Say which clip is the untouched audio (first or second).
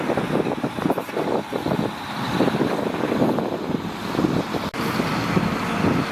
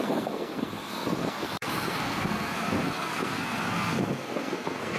first